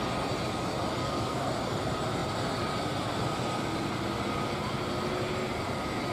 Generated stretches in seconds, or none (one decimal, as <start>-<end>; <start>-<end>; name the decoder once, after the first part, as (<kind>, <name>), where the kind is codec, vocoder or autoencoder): 1.0-1.5 (codec, SNAC)